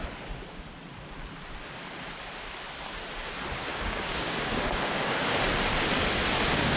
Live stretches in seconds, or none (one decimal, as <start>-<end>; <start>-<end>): 0.0-3.7; 5.3-6.8